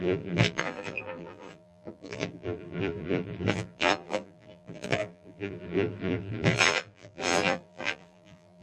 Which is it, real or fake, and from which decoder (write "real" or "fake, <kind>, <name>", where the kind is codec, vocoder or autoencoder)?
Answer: fake, vocoder, BigVGAN v2